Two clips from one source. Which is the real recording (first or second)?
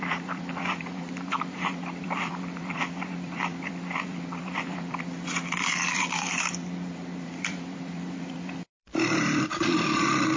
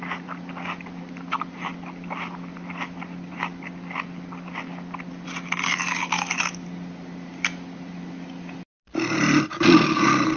second